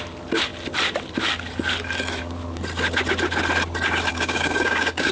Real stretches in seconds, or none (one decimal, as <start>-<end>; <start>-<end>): 0.0-4.1

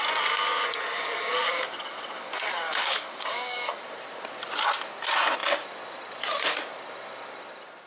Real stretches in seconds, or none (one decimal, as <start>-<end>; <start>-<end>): 0.0-0.9; 3.8-7.9

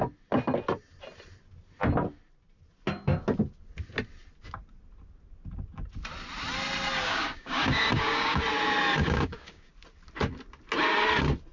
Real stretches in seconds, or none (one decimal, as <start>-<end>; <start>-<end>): 0.0-7.0; 8.4-9.0; 9.7-11.5

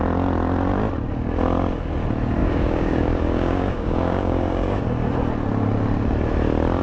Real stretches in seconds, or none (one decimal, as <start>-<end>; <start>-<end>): 0.0-2.4; 4.8-6.8

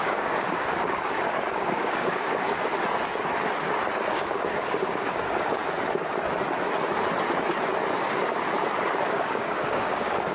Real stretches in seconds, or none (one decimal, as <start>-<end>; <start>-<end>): 2.7-4.1; 5.6-9.1

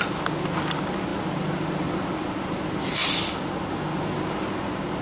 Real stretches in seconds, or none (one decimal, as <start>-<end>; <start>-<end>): 0.0-5.0